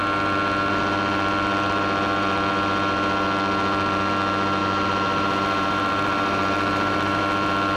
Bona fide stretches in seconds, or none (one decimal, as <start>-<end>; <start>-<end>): 0.0-4.6; 7.2-7.8